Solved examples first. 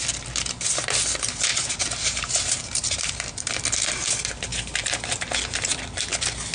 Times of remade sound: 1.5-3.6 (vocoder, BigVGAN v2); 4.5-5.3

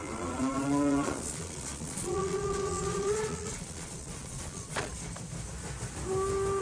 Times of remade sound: 0.0-4.9 (vocoder, Vocos)

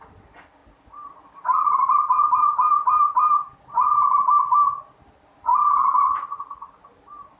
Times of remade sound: none

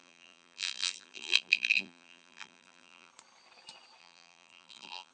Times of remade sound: 0.0-3.1 (vocoder, BigVGAN v2); 4.0-5.1

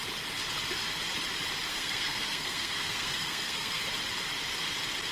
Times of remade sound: 1.7-3.8 (codec, SNAC)